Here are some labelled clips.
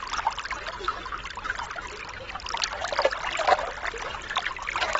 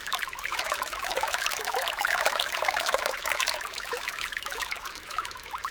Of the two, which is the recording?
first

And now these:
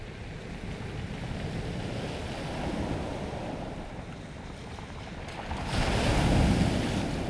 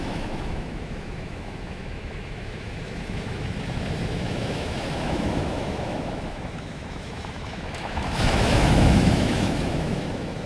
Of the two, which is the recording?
first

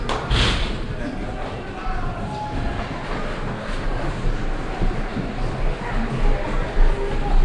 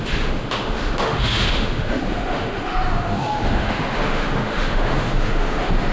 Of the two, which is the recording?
first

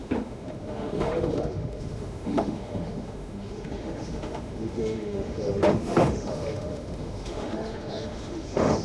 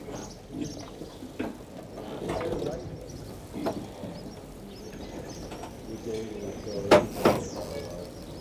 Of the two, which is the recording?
second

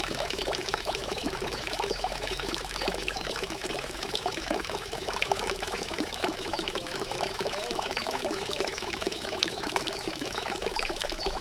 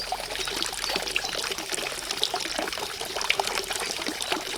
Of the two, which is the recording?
second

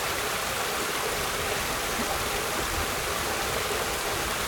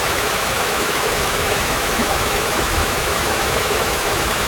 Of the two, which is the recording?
first